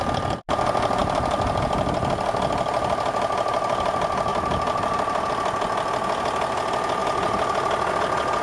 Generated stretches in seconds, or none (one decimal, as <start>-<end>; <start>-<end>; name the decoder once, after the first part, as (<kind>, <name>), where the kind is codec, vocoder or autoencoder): 1.0-1.6 (vocoder, BigVGAN v2); 4.3-5.3